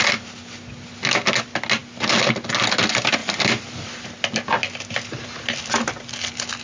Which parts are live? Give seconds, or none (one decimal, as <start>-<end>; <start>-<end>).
0.0-6.6